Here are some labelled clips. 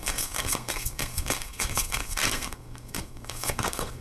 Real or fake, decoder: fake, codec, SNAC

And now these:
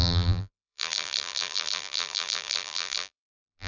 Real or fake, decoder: fake, vocoder, BigVGAN v2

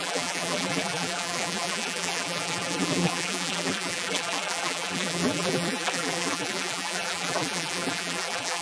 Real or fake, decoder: fake, vocoder, BigVGAN v2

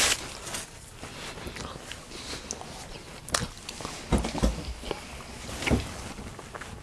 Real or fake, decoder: real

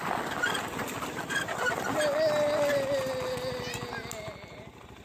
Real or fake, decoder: real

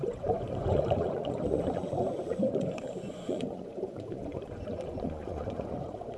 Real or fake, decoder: fake, vocoder, Vocos